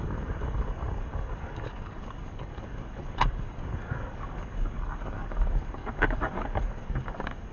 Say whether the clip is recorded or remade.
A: remade